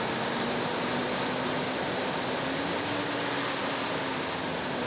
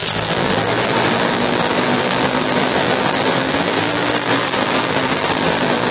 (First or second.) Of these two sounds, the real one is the first